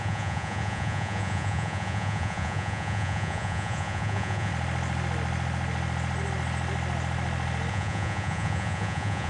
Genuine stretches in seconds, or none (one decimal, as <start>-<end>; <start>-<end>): 4.5-7.7